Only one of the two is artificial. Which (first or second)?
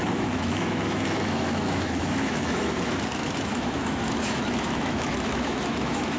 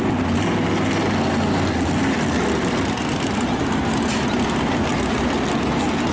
first